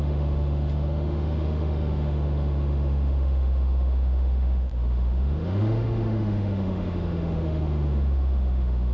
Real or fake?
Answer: fake